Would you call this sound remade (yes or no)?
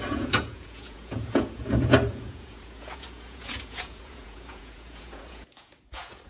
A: yes